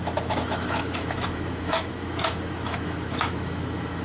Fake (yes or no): yes